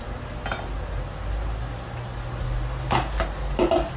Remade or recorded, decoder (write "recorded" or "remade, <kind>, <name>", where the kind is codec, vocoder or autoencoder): recorded